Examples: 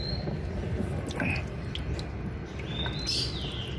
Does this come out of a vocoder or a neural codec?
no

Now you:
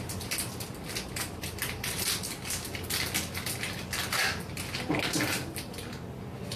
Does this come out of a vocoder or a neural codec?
no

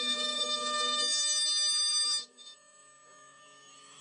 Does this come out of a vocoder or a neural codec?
yes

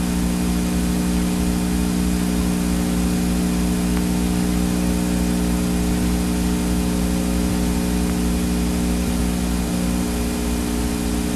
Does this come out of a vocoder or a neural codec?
no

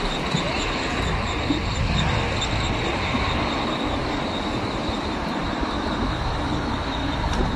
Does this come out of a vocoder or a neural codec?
no